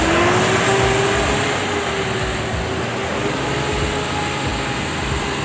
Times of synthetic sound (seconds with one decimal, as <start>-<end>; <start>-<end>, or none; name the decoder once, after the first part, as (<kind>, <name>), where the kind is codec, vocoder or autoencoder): none